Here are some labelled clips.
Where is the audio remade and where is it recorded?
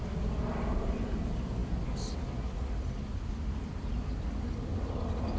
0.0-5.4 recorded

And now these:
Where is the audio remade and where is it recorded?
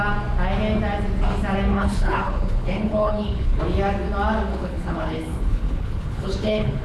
0.0-1.7 recorded; 1.7-3.6 remade; 3.6-4.5 recorded; 4.5-6.8 remade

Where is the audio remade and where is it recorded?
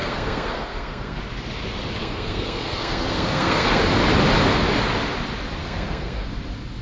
0.0-1.2 remade; 1.2-2.0 recorded; 2.0-3.8 remade; 3.8-5.6 recorded; 5.6-6.3 remade; 6.3-6.8 recorded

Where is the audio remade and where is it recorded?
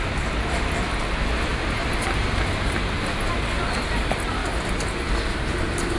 0.0-6.0 recorded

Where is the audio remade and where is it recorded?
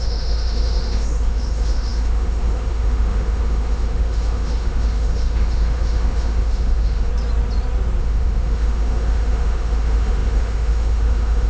0.0-7.1 remade; 7.1-8.0 recorded; 8.0-11.5 remade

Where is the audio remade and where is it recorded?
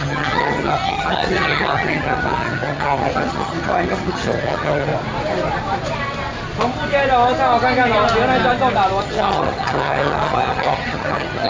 0.0-4.9 remade; 4.9-9.0 recorded; 9.0-11.5 remade